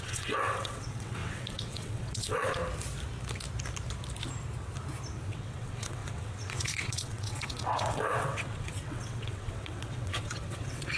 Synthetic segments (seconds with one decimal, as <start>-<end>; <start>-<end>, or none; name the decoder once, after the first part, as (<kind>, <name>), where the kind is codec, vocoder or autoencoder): 0.0-2.6 (vocoder, WaveNeXt); 5.3-11.0